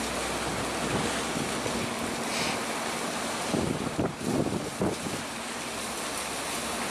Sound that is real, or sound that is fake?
real